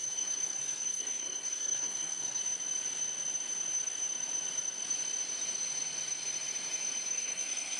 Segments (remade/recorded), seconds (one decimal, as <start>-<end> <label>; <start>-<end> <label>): 0.0-2.4 remade; 2.4-7.1 recorded; 7.1-7.8 remade